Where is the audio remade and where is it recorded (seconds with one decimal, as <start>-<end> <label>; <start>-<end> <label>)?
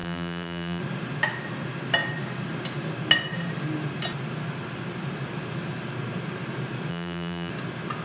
0.0-0.8 remade; 0.8-6.9 recorded; 6.9-7.5 remade; 7.5-8.0 recorded